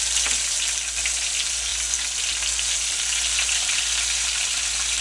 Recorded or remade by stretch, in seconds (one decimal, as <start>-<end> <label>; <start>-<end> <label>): 0.0-5.0 recorded